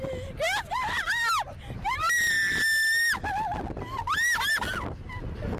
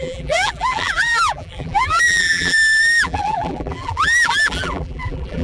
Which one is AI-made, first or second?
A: second